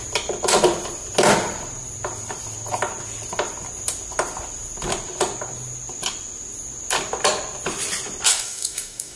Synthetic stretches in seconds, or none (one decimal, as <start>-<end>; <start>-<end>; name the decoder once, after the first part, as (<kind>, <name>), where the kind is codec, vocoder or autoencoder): 8.3-9.2 (codec, DAC)